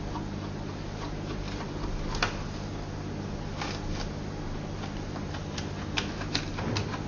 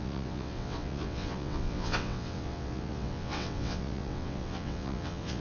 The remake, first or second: second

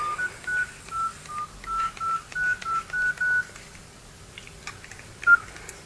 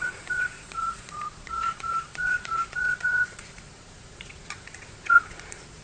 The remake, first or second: second